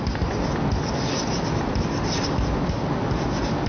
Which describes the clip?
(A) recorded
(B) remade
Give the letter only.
A